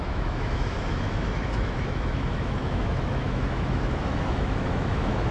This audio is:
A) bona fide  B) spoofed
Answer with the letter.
B